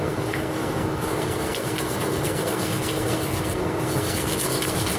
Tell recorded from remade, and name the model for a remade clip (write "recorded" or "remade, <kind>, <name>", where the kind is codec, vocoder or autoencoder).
remade, codec, SNAC